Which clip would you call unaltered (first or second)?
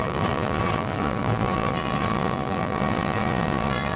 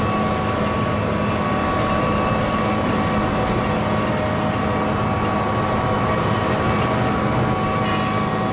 second